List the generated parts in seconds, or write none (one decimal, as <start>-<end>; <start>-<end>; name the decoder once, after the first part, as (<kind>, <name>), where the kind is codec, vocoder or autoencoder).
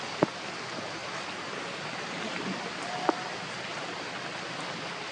none